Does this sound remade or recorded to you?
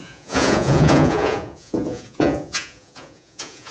remade